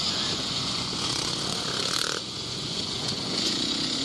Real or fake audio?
fake